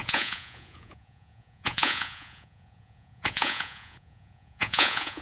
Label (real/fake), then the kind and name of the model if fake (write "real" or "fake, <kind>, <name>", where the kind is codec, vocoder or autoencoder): fake, vocoder, Vocos